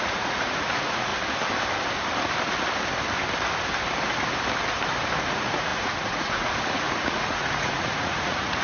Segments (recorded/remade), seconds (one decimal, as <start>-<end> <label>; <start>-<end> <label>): 0.0-1.1 remade; 1.1-5.2 recorded; 5.2-8.6 remade